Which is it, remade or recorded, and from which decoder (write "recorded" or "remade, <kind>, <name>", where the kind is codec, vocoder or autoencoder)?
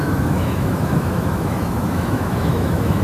remade, autoencoder, DAC-VAE